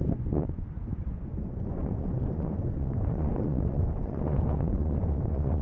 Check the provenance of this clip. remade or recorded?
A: remade